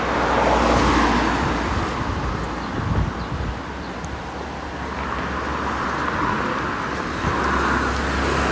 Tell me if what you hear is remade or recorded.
recorded